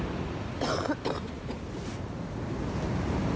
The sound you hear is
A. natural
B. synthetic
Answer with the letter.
A